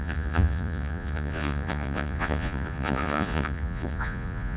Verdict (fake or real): fake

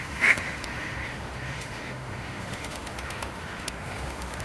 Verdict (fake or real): fake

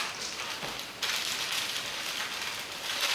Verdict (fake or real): real